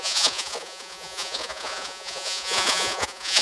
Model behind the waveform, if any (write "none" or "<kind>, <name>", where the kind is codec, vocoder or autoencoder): vocoder, Vocos